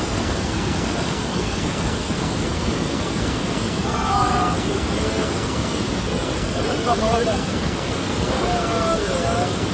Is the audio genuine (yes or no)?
no